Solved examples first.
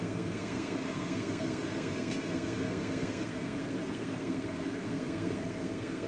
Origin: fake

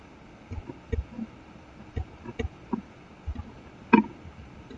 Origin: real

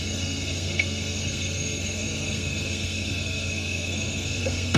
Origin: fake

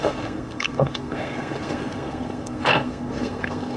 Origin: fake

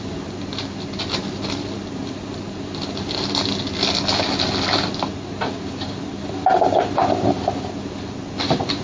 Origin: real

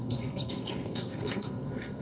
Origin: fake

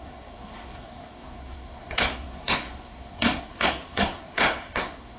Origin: fake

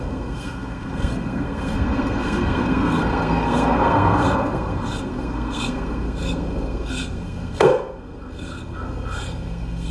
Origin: fake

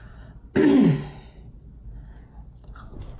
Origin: real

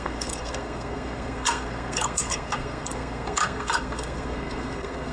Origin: fake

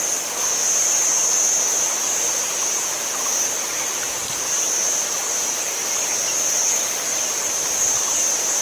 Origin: real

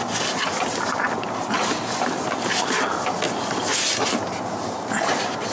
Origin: real